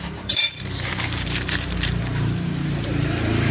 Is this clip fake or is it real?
fake